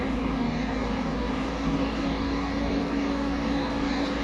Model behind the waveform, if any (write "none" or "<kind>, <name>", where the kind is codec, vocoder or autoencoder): codec, DAC